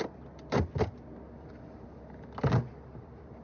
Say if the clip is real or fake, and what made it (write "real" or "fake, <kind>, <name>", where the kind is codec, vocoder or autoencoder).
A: fake, vocoder, BigVGAN v2